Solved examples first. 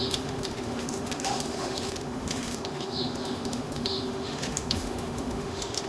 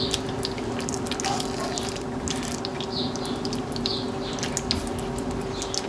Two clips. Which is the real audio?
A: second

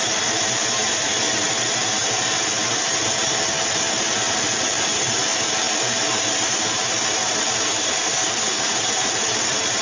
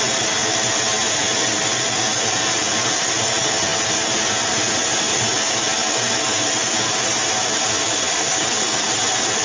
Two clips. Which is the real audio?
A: second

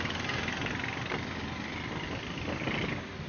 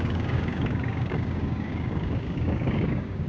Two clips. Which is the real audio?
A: first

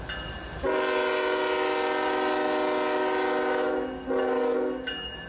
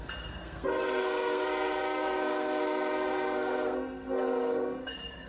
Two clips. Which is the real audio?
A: first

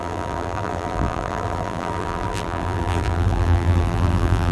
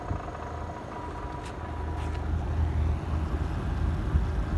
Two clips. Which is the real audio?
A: second